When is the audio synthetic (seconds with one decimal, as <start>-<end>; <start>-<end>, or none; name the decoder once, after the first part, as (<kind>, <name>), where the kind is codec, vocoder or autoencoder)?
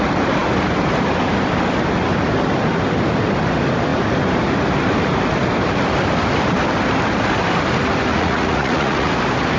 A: 8.1-9.1 (vocoder, Vocos)